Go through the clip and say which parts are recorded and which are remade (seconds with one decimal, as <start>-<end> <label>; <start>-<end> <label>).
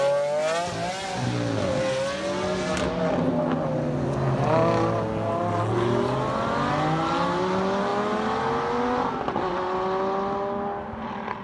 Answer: 0.0-11.4 recorded